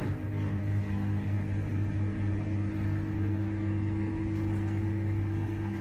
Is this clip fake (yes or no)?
yes